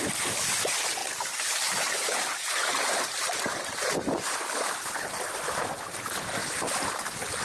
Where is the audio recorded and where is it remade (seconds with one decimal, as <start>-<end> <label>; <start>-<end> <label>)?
0.0-1.0 recorded; 1.0-3.7 remade; 3.7-7.4 recorded